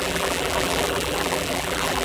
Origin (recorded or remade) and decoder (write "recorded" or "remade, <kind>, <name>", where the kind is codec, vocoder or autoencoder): remade, vocoder, BigVGAN v2